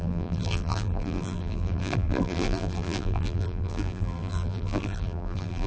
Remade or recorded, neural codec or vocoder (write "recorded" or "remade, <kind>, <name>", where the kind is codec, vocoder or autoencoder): remade, vocoder, BigVGAN v2